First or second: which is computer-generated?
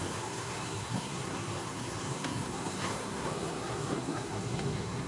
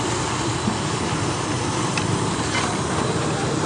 first